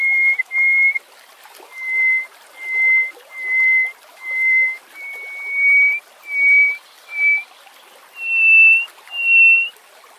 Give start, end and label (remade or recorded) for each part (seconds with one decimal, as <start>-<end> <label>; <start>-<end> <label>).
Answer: 0.0-4.1 recorded; 4.1-4.8 remade; 4.8-10.2 recorded